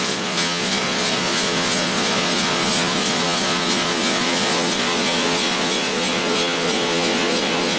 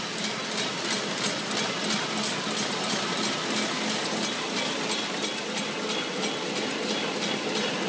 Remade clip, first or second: first